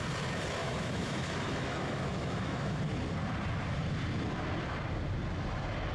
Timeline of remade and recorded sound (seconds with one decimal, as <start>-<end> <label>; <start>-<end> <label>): 0.0-0.6 recorded; 0.6-2.8 remade; 2.8-5.9 recorded